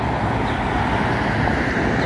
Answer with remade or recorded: recorded